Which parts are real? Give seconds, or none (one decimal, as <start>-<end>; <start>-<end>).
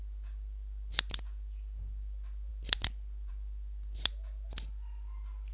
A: 0.0-5.5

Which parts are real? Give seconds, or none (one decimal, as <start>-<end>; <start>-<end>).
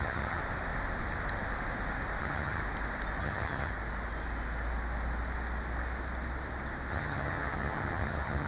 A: 0.4-2.2; 2.6-3.2; 3.7-6.9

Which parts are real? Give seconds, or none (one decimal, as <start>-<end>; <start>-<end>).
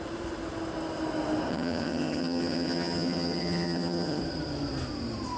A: 0.0-1.5; 4.2-5.4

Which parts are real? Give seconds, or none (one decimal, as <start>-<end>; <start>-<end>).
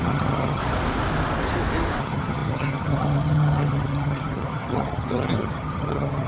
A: 0.6-2.0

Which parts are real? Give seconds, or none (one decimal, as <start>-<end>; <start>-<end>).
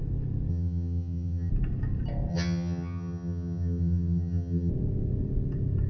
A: 0.0-0.5; 1.5-2.3; 4.7-5.9